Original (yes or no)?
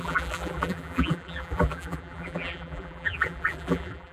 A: no